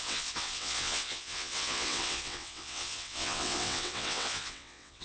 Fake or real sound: fake